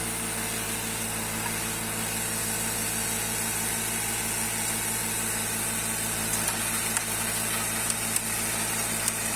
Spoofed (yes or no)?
no